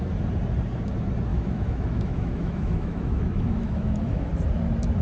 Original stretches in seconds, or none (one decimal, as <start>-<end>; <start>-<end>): 0.0-1.3; 4.3-5.0